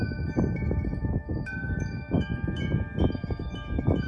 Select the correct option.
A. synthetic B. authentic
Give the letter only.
A